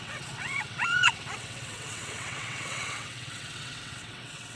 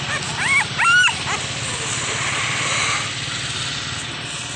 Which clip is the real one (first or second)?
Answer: second